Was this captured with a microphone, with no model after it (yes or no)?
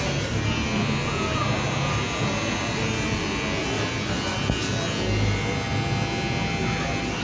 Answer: yes